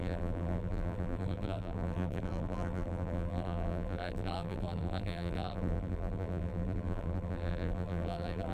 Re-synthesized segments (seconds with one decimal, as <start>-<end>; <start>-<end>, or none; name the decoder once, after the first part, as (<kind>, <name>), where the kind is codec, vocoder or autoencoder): 0.0-8.5 (vocoder, BigVGAN v2)